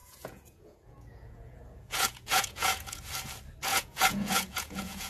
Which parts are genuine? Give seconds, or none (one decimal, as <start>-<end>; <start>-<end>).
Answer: 3.1-3.7